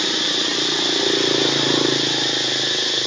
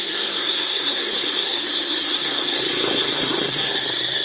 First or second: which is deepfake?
second